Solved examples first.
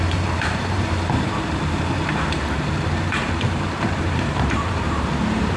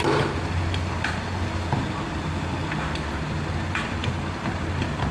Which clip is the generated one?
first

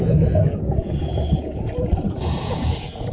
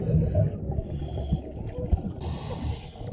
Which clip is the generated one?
first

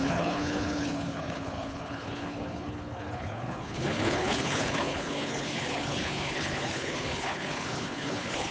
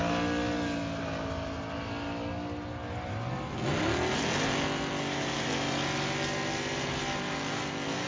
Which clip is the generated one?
first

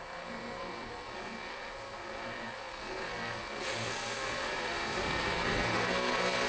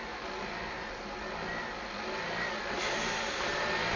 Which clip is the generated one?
first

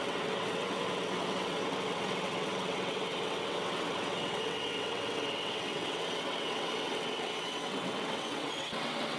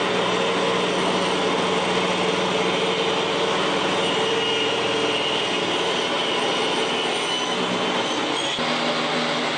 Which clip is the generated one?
first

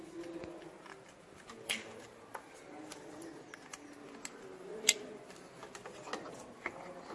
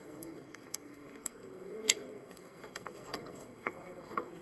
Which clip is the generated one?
second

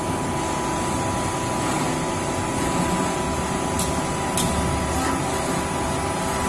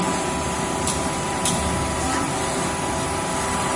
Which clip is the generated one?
second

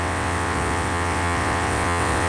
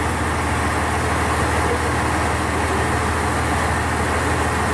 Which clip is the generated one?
first